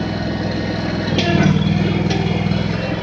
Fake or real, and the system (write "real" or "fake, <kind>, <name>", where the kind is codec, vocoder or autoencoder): real